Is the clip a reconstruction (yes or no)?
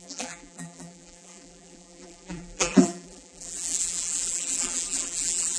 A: yes